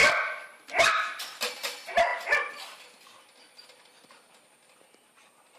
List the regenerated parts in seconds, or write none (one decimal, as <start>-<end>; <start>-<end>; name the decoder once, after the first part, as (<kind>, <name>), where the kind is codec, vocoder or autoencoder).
none